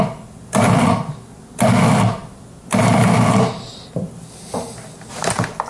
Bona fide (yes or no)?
yes